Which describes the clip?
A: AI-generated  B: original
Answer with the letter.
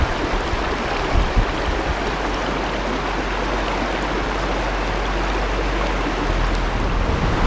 B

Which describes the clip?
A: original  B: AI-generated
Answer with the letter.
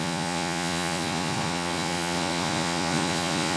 B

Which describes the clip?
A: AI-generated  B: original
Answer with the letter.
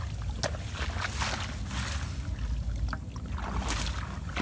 B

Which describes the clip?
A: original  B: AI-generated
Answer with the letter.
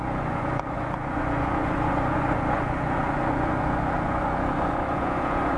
B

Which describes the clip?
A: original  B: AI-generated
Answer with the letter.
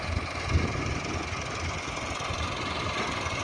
A